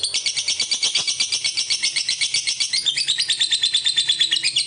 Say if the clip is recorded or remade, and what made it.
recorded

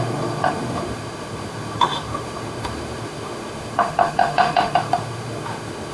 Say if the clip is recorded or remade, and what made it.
remade, autoencoder, DAC-VAE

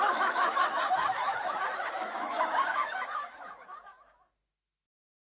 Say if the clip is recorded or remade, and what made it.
remade, autoencoder, DAC-VAE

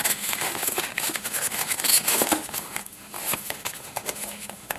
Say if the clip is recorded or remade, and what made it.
remade, autoencoder, DAC-VAE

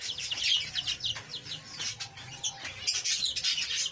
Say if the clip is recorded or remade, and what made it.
recorded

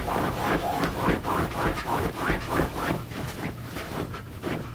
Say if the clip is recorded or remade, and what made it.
remade, autoencoder, DAC-VAE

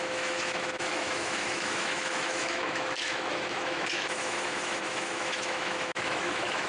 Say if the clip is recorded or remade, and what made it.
remade, autoencoder, DAC-VAE